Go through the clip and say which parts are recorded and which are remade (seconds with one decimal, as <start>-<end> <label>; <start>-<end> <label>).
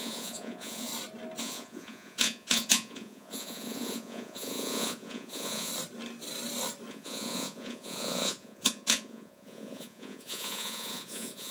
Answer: 0.0-0.9 remade; 0.9-1.4 recorded; 1.4-5.7 remade; 5.7-6.9 recorded; 6.9-11.5 remade